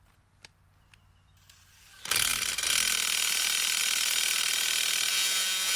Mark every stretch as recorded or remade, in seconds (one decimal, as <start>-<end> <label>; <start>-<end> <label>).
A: 0.0-5.1 recorded; 5.1-5.8 remade

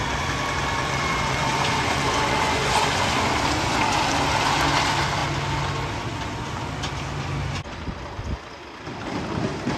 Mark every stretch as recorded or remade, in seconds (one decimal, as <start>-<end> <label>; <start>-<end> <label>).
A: 0.0-0.8 recorded; 0.8-3.8 remade; 3.8-9.8 recorded

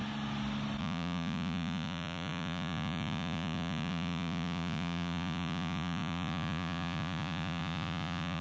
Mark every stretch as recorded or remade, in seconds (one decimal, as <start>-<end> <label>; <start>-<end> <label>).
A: 0.0-0.8 recorded; 0.8-8.4 remade

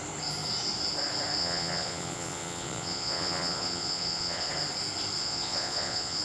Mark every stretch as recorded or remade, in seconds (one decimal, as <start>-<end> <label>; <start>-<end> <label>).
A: 0.0-1.4 recorded; 1.4-4.5 remade; 4.5-5.2 recorded; 5.2-6.2 remade

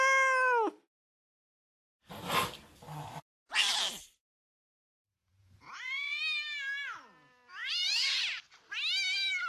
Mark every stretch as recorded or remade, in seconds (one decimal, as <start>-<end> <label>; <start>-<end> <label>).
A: 0.0-5.1 recorded; 5.1-6.2 remade; 6.2-7.6 recorded; 7.6-8.2 remade; 8.2-9.5 recorded

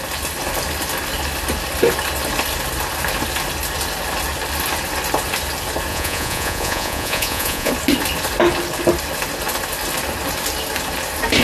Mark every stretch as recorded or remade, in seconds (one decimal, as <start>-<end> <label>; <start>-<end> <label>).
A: 0.0-5.9 recorded; 5.9-7.7 remade; 7.7-11.4 recorded

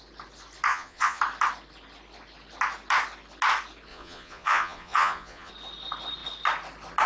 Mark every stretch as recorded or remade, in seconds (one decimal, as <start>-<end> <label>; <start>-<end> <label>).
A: 0.0-0.7 recorded; 0.7-1.2 remade; 1.2-3.9 recorded; 3.9-5.5 remade; 5.5-7.1 recorded

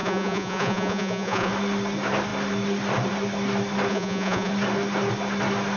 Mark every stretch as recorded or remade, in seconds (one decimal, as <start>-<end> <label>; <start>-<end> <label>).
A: 0.0-1.5 remade; 1.5-3.9 recorded; 3.9-4.5 remade; 4.5-5.8 recorded